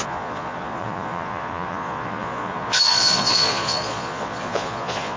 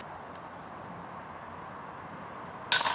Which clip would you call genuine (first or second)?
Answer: second